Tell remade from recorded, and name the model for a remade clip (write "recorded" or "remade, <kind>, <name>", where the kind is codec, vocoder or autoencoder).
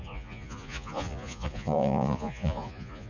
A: remade, vocoder, Vocos